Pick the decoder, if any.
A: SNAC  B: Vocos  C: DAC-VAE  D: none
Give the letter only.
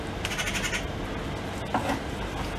D